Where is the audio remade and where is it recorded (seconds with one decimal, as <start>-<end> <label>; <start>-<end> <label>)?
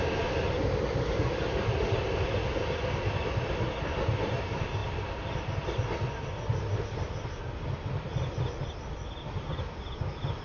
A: 0.0-10.4 recorded